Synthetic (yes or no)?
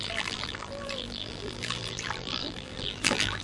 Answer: yes